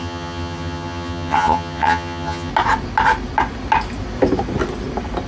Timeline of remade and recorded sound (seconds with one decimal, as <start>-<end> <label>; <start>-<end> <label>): 0.0-2.5 remade; 2.5-5.3 recorded